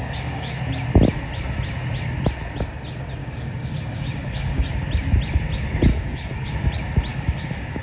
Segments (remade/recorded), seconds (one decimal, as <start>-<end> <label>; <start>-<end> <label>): 0.0-0.6 remade; 0.6-3.2 recorded; 3.2-4.7 remade; 4.7-5.9 recorded; 5.9-6.5 remade; 6.5-7.1 recorded; 7.1-7.8 remade